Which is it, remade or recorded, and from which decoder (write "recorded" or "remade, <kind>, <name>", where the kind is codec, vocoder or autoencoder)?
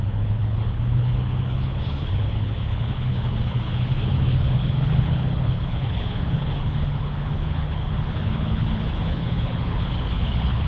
remade, codec, HILCodec